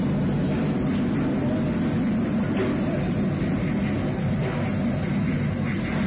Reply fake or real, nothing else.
real